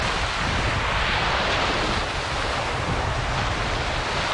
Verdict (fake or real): real